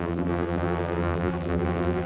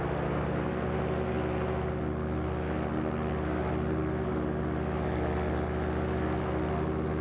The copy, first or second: first